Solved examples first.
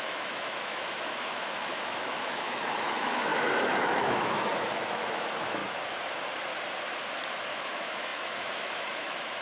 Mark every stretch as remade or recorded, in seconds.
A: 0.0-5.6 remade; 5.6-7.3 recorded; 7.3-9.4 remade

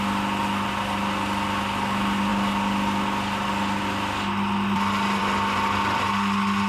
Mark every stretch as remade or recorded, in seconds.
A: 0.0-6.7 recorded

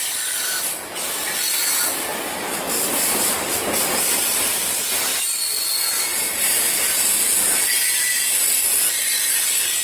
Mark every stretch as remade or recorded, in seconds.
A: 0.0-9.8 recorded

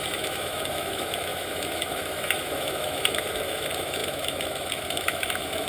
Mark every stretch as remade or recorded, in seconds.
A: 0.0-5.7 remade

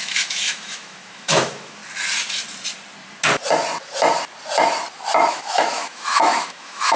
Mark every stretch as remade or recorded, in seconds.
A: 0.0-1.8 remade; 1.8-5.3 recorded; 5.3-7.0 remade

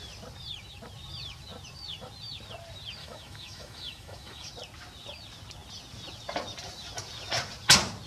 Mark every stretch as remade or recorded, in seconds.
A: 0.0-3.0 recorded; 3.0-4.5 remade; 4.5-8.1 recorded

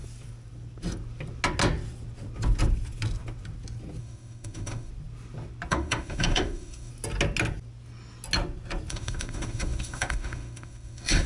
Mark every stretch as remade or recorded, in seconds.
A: 0.0-4.0 recorded; 4.0-4.9 remade; 4.9-5.7 recorded; 5.7-6.9 remade; 6.9-8.9 recorded; 8.9-11.3 remade

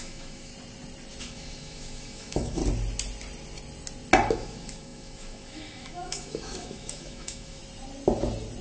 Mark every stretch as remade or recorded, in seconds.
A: 0.0-0.5 remade; 0.5-1.2 recorded; 1.2-2.6 remade; 2.6-4.3 recorded; 4.3-7.6 remade; 7.6-8.6 recorded